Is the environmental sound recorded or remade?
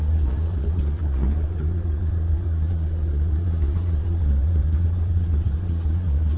remade